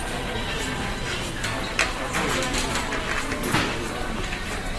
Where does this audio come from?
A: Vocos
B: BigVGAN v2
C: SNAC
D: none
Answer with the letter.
D